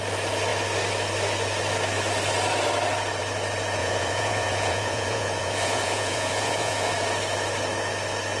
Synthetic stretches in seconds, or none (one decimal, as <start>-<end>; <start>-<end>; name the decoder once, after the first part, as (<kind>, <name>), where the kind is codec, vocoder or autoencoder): 3.8-6.9 (vocoder, Vocos)